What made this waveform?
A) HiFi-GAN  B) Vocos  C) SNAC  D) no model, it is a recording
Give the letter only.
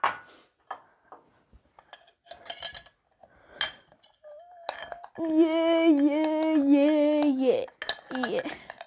D